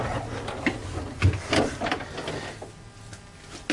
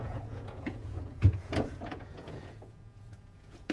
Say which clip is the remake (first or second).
second